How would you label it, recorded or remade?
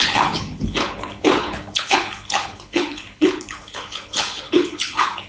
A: remade